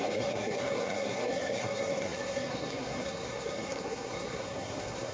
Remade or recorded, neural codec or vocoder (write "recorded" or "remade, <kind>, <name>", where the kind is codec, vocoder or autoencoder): remade, codec, SNAC